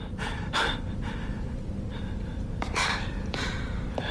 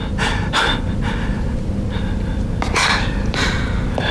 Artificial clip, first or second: first